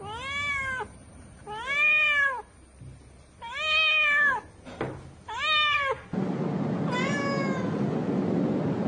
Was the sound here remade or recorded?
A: recorded